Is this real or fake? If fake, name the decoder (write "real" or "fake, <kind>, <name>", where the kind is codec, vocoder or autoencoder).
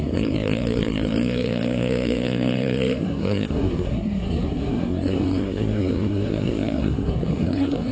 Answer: fake, codec, SNAC